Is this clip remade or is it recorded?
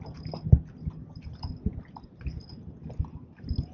recorded